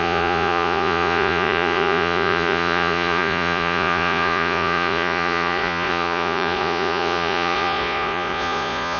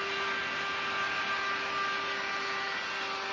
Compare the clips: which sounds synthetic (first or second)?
first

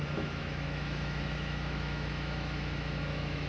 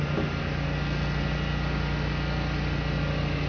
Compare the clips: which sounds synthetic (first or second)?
first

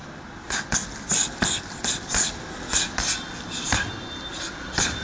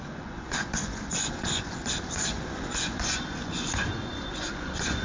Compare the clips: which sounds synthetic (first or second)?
second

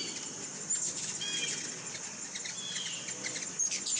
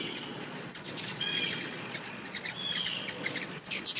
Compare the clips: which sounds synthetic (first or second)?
second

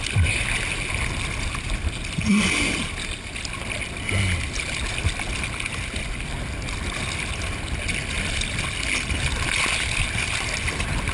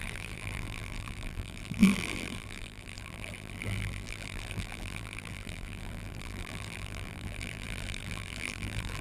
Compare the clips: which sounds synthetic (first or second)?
second